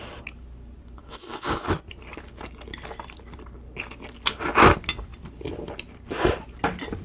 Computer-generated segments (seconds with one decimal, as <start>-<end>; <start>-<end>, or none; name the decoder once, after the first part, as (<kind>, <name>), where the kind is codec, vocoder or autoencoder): 1.0-1.6 (autoencoder, DAC-VAE)